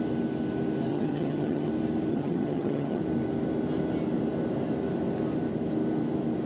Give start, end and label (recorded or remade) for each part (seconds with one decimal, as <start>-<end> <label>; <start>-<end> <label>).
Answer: 0.0-0.9 recorded; 0.9-1.7 remade; 1.7-2.1 recorded; 2.1-3.0 remade; 3.0-6.5 recorded